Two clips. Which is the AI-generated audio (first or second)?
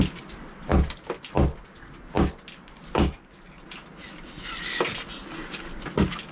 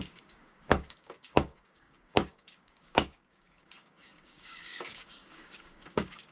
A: second